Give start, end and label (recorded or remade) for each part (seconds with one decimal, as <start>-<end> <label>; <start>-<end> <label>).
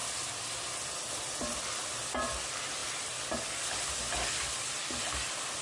0.0-5.6 recorded